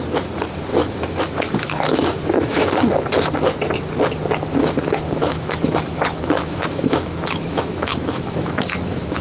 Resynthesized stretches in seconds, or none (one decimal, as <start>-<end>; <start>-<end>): 0.7-2.7; 4.6-9.2